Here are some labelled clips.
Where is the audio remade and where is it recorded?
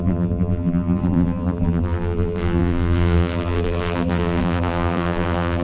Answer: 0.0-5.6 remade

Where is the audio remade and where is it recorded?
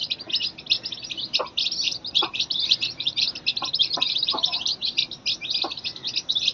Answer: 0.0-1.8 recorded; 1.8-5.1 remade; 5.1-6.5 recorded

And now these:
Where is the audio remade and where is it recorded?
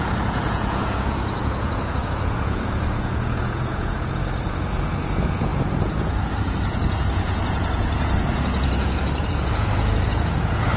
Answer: 0.0-10.8 remade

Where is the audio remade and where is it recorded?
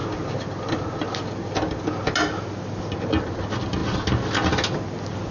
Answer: 0.0-5.3 recorded